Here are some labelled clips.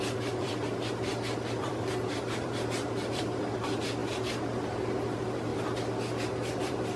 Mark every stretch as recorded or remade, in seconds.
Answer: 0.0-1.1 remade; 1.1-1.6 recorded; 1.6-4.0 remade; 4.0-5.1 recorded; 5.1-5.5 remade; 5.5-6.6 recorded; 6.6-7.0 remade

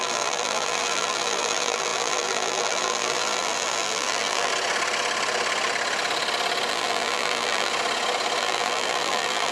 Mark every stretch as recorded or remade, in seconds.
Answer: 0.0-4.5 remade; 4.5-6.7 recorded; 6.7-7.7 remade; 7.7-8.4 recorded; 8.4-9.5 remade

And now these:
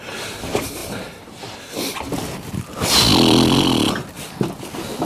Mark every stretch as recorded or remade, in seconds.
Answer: 0.0-5.1 remade

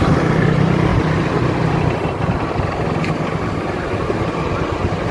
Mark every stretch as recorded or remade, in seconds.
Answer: 0.0-0.9 remade; 0.9-3.8 recorded; 3.8-5.1 remade